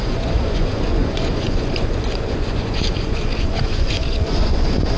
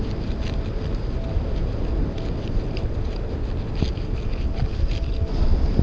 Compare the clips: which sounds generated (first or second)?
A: first